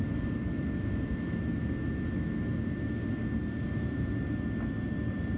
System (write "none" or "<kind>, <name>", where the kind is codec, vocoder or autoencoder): none